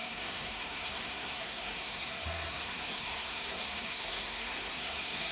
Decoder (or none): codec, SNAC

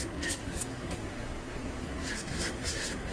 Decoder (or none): codec, SNAC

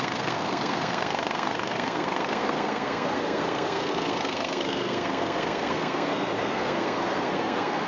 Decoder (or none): codec, SNAC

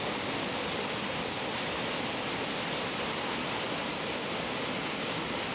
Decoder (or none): none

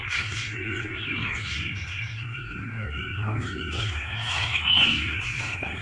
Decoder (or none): codec, SNAC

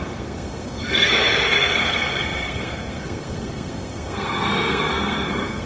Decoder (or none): codec, SNAC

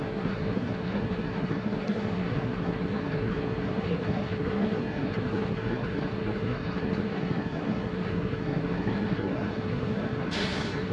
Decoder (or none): codec, SNAC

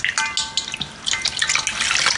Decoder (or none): none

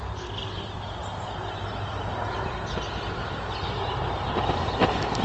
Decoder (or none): none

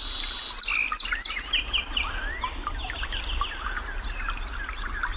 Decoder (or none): none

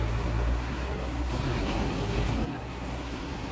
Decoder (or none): codec, SNAC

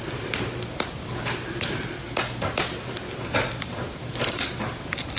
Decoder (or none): none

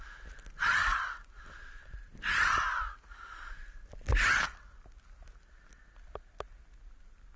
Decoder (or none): none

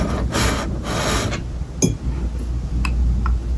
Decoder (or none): none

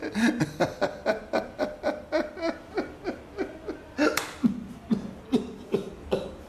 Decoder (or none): none